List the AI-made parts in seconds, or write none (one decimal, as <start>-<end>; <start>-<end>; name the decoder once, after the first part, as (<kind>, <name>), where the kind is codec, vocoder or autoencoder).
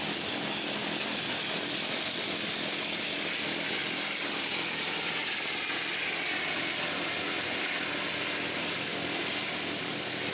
none